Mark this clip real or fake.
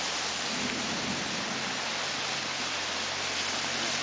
real